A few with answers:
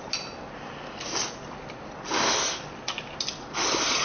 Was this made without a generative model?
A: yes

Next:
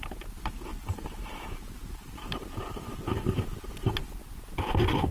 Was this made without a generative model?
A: no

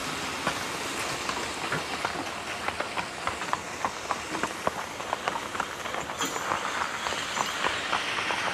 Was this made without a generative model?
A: yes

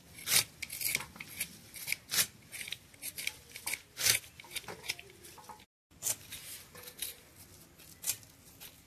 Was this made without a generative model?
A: yes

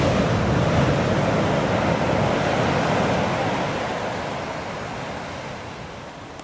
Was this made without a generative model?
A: yes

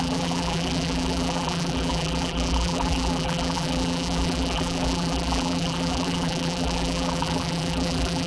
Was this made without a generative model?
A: no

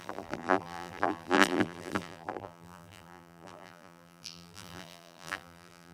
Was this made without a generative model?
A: no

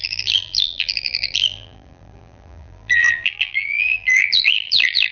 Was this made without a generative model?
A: no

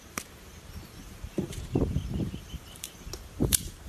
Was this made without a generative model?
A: no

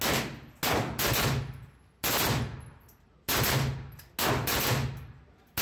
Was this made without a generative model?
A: yes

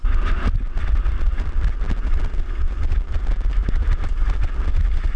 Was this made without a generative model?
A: yes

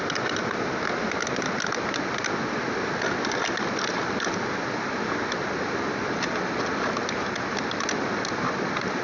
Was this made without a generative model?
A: yes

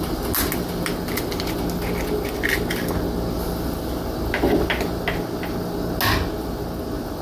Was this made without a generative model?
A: yes